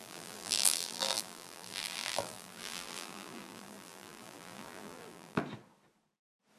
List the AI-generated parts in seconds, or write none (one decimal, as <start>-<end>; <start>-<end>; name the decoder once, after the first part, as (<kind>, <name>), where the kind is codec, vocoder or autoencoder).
0.0-5.4 (vocoder, BigVGAN v2)